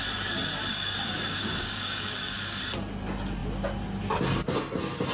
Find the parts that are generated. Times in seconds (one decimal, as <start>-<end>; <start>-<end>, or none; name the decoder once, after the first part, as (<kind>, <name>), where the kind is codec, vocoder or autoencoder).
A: 0.7-2.6 (codec, DAC)